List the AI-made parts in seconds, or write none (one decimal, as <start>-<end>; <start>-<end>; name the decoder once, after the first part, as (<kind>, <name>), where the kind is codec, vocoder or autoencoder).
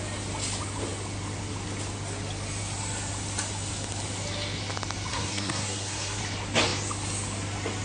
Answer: 5.1-6.2 (codec, SNAC)